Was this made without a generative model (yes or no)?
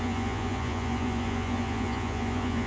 no